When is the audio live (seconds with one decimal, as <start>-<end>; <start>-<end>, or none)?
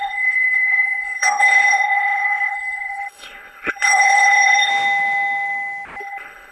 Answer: 4.7-6.0